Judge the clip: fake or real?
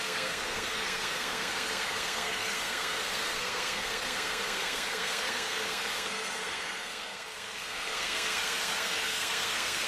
fake